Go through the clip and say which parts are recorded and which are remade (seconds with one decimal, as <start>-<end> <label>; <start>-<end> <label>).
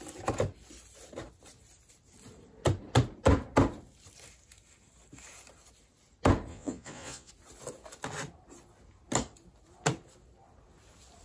0.0-6.5 recorded; 6.5-7.3 remade; 7.3-11.2 recorded